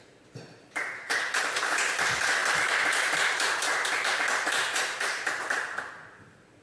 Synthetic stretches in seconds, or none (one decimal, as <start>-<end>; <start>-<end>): 0.0-2.4; 3.9-6.6